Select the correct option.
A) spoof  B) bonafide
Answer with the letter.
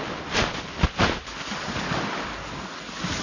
B